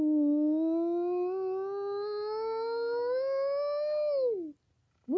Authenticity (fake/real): real